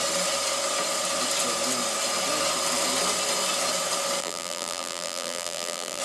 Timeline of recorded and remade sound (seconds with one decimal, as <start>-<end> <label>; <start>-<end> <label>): 0.0-4.2 recorded; 4.2-6.0 remade